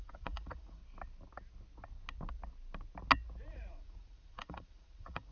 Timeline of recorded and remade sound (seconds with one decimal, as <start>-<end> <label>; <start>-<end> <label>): 0.0-0.8 remade; 0.8-3.5 recorded; 3.5-5.3 remade